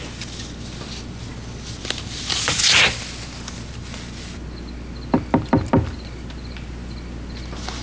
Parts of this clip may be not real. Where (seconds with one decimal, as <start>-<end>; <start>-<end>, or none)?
none